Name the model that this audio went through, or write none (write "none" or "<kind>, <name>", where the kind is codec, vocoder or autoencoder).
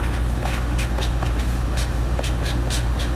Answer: autoencoder, DAC-VAE